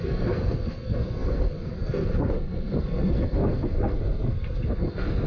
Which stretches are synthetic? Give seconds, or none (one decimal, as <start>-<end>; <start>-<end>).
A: 0.0-5.3